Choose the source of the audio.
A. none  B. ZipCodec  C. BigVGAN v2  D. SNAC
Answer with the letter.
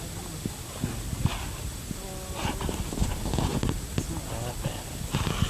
A